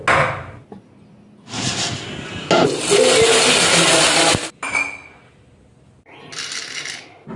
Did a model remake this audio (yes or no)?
no